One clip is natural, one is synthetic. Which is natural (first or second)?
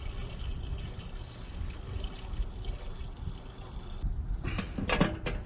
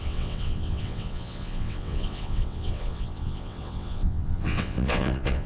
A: first